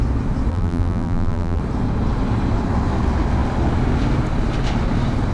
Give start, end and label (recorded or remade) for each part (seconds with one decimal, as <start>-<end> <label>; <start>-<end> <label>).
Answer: 0.0-0.5 recorded; 0.5-1.6 remade; 1.6-5.3 recorded